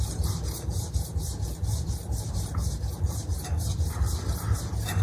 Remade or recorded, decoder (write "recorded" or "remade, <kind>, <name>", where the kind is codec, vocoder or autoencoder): remade, vocoder, BigVGAN v2